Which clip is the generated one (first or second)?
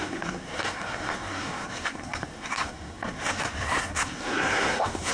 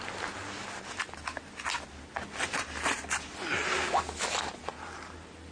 first